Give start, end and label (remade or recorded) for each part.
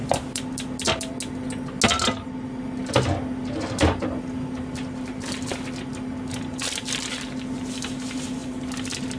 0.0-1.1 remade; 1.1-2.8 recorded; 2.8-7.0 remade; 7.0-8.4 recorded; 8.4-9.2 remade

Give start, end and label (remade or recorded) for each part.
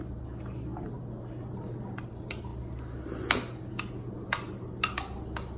0.0-5.6 recorded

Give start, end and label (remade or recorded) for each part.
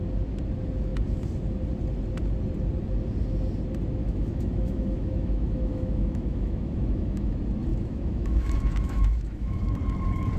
0.0-4.0 recorded; 4.0-7.3 remade; 7.3-7.7 recorded; 7.7-9.6 remade; 9.6-10.4 recorded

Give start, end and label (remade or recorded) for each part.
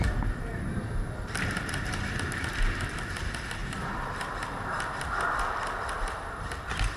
0.0-3.6 recorded; 3.6-5.3 remade; 5.3-7.0 recorded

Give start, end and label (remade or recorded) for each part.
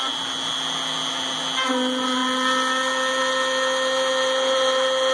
0.0-5.1 recorded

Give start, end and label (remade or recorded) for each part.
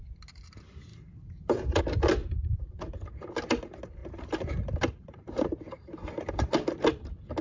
0.0-0.9 recorded; 0.9-1.8 remade; 1.8-4.0 recorded; 4.0-5.6 remade; 5.6-7.4 recorded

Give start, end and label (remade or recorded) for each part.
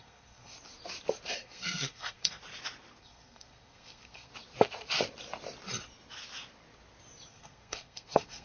0.0-0.5 remade; 0.5-1.3 recorded; 1.3-2.4 remade; 2.4-3.0 recorded; 3.0-4.3 remade; 4.3-7.3 recorded; 7.3-8.4 remade